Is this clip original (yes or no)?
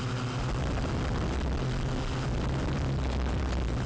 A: yes